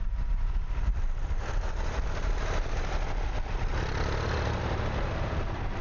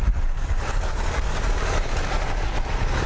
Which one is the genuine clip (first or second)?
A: first